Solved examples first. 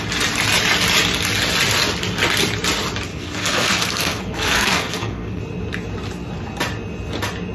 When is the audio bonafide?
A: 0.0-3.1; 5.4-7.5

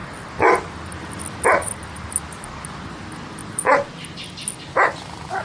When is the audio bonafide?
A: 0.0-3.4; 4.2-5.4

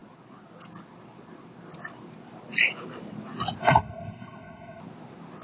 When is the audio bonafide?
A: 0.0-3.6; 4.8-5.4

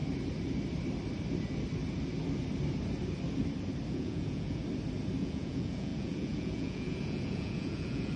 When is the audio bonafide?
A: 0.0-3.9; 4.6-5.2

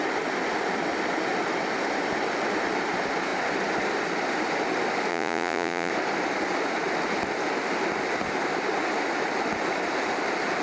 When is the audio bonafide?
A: 0.0-5.1; 5.9-10.6

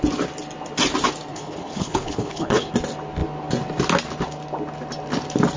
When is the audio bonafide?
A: 0.0-1.3; 2.7-5.6

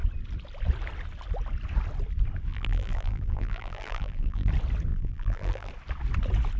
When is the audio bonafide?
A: 0.0-2.5; 4.5-4.9; 5.7-6.6